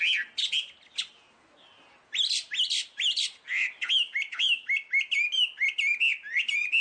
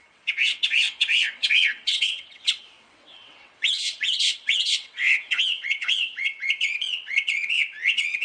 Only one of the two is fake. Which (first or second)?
second